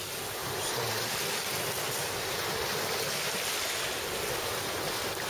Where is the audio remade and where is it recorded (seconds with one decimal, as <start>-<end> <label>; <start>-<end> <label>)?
0.0-0.4 recorded; 0.4-0.9 remade; 0.9-5.3 recorded